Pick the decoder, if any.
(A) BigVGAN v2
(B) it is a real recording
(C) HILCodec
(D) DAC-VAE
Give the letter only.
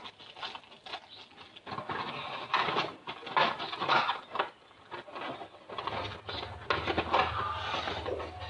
B